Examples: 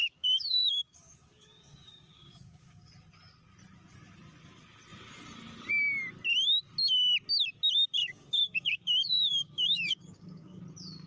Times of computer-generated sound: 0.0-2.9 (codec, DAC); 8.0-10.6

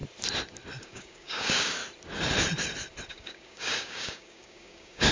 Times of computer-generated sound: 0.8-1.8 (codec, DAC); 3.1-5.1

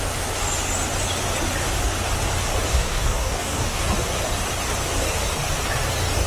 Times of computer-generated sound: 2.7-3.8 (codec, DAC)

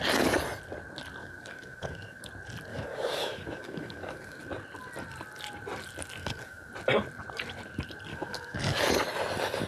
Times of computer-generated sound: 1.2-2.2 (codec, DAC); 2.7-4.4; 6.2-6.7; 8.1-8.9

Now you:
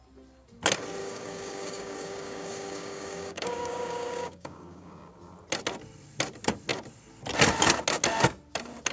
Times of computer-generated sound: 1.0-5.1 (codec, DAC)